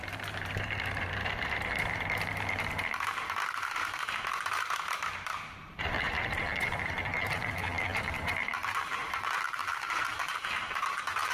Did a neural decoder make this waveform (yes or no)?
yes